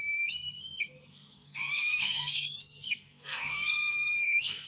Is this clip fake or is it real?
fake